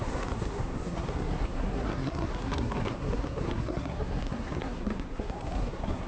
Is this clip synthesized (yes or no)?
yes